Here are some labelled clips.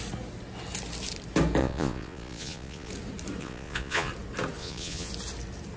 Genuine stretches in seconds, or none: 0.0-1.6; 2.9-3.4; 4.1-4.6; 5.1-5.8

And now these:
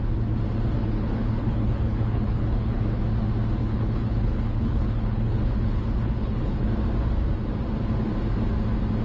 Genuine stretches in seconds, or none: 0.0-0.8; 3.0-3.6; 6.7-9.0

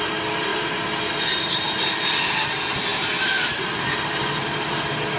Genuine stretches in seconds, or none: 0.0-2.9; 3.6-5.2

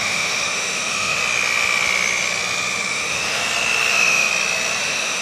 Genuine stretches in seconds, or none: 1.2-2.9; 3.4-3.9; 4.3-4.8

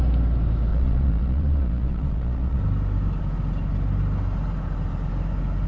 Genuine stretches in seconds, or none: 0.0-0.7; 2.6-5.7